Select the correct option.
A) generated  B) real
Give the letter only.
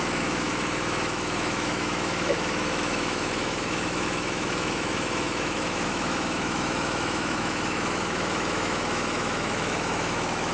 A